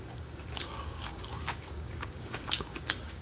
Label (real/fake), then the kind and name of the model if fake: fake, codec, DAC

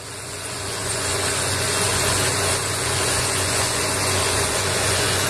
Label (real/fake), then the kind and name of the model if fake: fake, vocoder, Vocos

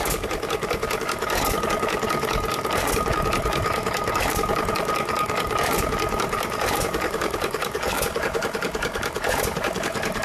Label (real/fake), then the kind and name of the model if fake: fake, codec, DAC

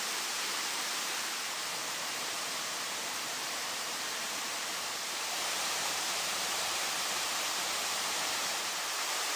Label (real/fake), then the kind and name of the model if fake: fake, vocoder, BigVGAN v2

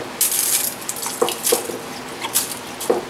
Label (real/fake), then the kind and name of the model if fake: real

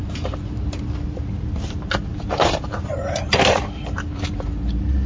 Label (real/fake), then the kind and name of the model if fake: fake, vocoder, BigVGAN v2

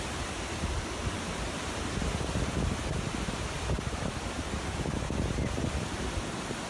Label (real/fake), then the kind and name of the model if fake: fake, vocoder, BigVGAN v2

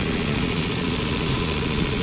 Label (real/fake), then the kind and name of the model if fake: fake, vocoder, Vocos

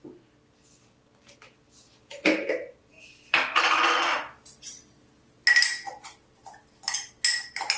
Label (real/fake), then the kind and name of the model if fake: real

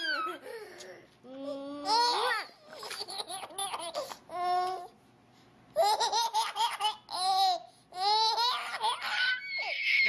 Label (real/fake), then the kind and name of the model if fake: real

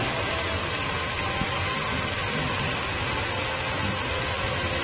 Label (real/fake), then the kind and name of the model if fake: real